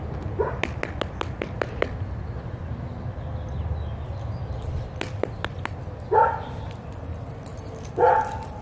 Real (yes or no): yes